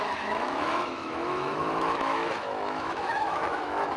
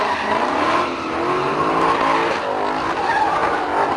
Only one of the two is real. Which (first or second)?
second